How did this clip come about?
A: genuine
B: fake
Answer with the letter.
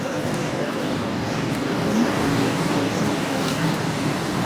B